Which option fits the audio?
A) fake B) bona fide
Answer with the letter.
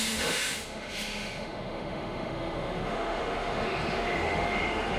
A